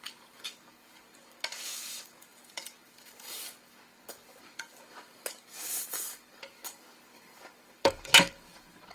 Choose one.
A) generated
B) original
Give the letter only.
A